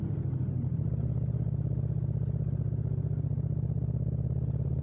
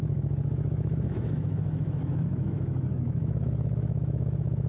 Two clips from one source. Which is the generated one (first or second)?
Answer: second